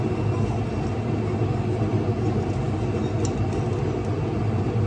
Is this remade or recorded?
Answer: recorded